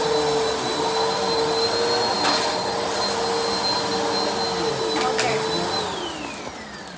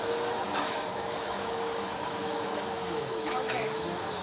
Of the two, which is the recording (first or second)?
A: first